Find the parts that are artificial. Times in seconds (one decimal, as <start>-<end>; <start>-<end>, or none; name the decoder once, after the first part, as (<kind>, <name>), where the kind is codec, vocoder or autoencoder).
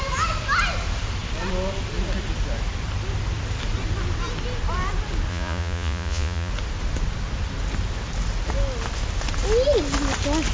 5.3-6.5 (vocoder, Vocos)